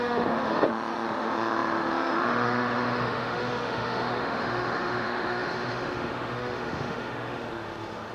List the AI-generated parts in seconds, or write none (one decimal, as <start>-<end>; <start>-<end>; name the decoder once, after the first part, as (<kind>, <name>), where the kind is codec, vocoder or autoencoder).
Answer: 0.0-8.1 (autoencoder, DAC-VAE)